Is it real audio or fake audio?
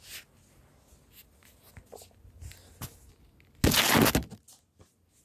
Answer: real